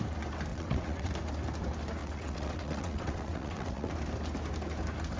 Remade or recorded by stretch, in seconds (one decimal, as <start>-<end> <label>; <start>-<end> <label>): 0.0-0.5 recorded; 0.5-1.1 remade; 1.1-2.0 recorded; 2.0-3.9 remade; 3.9-5.2 recorded